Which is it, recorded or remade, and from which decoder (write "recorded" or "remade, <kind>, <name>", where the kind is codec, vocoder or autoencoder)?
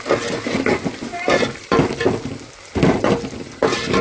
recorded